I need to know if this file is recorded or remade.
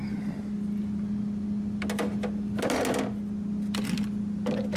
recorded